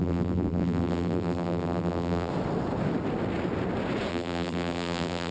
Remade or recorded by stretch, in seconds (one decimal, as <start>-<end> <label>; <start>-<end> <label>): 0.0-2.3 remade; 2.3-4.1 recorded; 4.1-5.3 remade